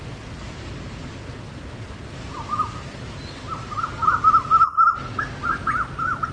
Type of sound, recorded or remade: recorded